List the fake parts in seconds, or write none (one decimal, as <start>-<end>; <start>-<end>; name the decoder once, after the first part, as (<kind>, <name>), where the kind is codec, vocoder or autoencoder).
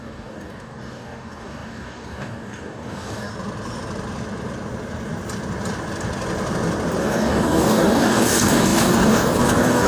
0.0-3.3 (codec, DAC); 7.0-9.9